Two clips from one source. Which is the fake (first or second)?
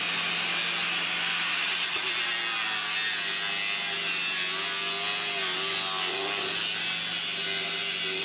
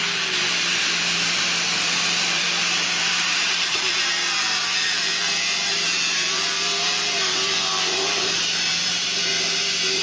second